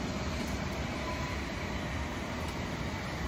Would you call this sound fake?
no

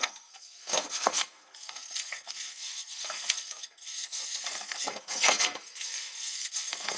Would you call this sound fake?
yes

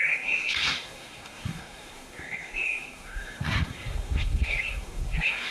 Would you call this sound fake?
yes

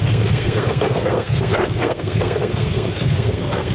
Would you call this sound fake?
yes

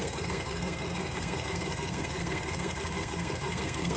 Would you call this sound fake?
yes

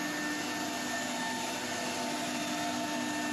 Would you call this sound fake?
no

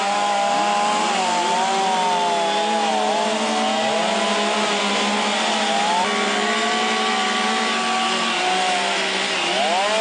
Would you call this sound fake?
no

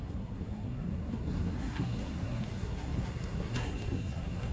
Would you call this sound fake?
yes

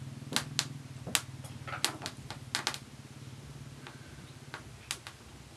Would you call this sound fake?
no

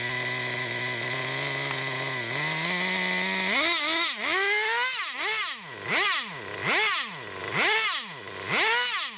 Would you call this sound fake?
no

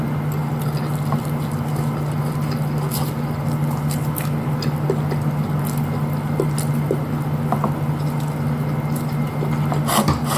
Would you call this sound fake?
no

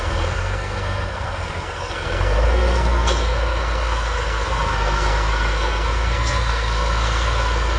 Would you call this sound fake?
yes